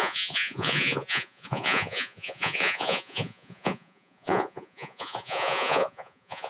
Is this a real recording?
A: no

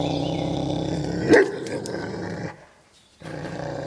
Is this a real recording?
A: no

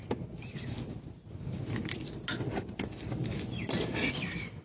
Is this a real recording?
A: yes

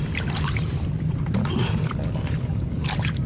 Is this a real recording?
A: yes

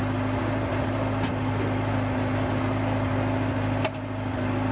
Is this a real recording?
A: yes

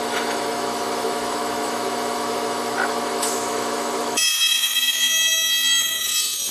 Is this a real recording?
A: no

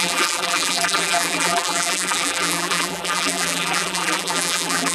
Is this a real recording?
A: no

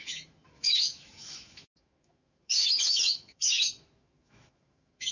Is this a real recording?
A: no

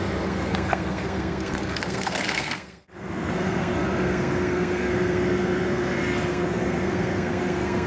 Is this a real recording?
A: no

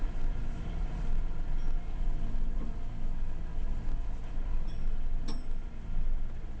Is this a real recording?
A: yes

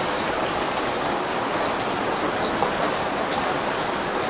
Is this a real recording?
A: yes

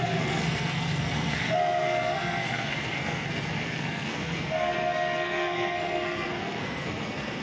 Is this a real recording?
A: no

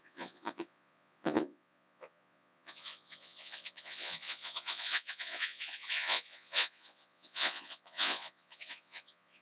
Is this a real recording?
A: no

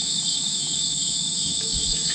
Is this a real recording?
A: no